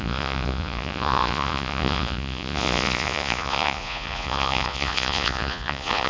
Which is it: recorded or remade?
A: remade